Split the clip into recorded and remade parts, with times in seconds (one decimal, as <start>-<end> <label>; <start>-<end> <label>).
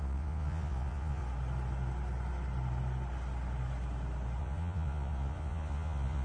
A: 0.0-1.2 remade; 1.2-4.4 recorded; 4.4-6.2 remade